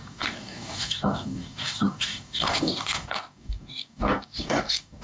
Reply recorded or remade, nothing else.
remade